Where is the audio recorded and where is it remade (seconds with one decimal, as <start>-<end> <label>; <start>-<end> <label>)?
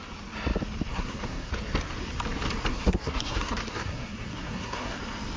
0.0-0.9 recorded; 0.9-1.5 remade; 1.5-2.7 recorded; 2.7-5.0 remade; 5.0-5.4 recorded